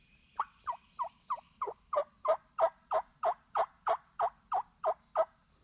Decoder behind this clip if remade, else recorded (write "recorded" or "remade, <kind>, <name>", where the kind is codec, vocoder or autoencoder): remade, vocoder, BigVGAN v2